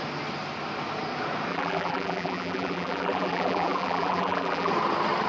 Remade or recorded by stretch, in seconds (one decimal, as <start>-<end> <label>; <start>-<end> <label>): 0.0-1.5 recorded; 1.5-4.7 remade; 4.7-5.3 recorded